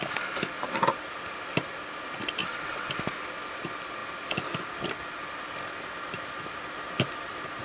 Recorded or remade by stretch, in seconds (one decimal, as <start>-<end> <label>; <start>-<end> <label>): 0.0-2.4 recorded; 2.4-2.9 remade; 2.9-7.6 recorded